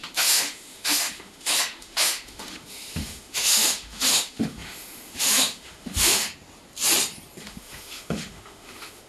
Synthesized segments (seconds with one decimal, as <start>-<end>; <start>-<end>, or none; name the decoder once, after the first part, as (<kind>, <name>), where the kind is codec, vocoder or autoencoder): 0.0-6.3 (autoencoder, DAC-VAE); 7.4-9.1

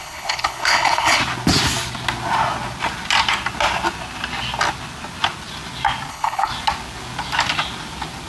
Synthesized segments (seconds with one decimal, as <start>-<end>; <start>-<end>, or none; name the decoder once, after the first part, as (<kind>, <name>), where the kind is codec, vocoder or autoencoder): 0.0-1.2 (codec, HILCodec); 6.1-6.5

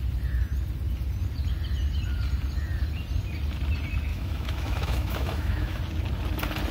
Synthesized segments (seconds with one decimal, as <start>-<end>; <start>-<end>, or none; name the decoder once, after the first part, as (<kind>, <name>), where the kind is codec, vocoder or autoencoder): 4.1-5.8 (autoencoder, DAC-VAE)

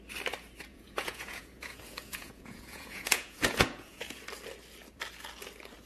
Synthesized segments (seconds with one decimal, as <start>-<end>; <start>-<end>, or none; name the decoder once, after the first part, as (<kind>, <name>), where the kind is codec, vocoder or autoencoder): 0.7-4.2 (vocoder, Vocos)

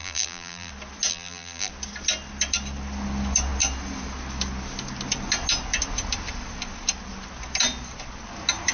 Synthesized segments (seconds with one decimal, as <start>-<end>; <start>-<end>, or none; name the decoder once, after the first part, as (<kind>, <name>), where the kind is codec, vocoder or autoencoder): 0.0-0.7 (vocoder, BigVGAN v2); 1.1-1.7